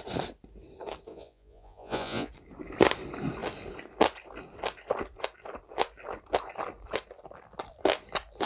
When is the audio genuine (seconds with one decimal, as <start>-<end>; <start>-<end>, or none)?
0.0-1.1; 2.3-8.5